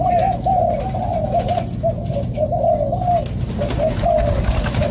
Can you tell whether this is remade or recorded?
recorded